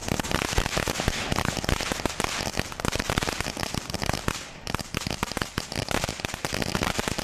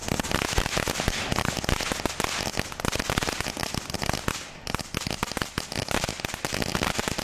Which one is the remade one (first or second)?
first